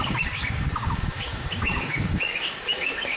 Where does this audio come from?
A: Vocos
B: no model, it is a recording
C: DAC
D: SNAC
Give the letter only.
C